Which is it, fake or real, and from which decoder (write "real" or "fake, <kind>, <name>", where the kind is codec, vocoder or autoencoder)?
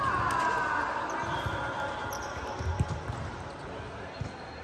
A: real